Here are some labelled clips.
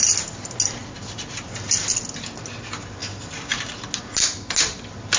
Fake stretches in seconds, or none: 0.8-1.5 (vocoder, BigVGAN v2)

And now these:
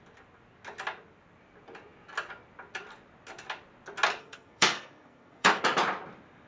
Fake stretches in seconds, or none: 4.2-5.6 (codec, SNAC)

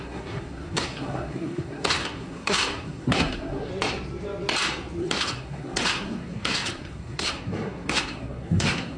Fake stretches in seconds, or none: 0.0-3.7 (codec, SNAC); 5.0-9.0

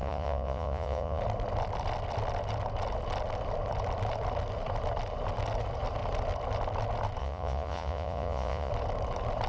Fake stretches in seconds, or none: 0.0-1.2 (vocoder, Vocos); 7.2-8.7

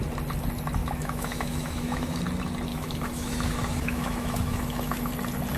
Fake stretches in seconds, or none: 0.8-2.2 (autoencoder, DAC-VAE); 2.7-5.1